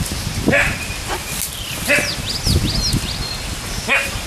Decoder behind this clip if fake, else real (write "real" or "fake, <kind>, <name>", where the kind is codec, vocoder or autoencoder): real